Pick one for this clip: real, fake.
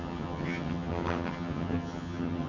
fake